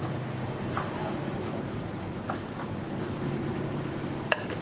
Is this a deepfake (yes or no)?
no